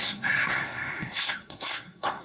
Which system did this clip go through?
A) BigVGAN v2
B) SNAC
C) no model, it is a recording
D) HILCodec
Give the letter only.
B